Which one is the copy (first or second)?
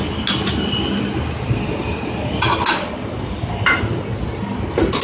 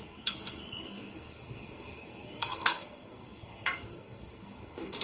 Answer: second